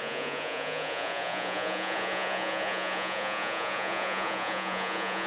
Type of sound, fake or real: fake